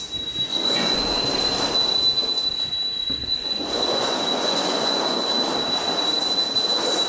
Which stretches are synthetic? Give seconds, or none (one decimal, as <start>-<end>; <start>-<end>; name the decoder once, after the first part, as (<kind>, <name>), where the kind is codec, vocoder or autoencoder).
0.5-1.2 (vocoder, Vocos); 3.3-5.3